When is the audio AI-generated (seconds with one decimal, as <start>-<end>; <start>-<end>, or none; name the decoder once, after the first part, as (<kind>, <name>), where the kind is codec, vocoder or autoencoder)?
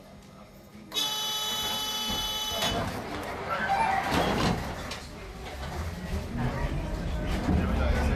none